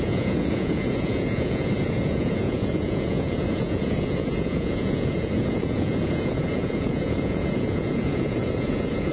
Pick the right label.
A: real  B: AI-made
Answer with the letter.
B